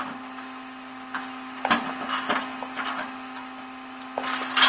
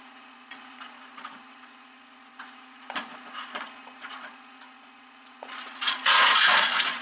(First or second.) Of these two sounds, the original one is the first